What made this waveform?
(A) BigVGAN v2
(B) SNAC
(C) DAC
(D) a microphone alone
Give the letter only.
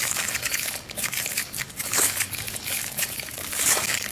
C